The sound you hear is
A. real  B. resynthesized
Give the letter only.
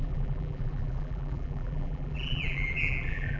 B